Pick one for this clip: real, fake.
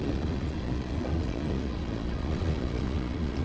fake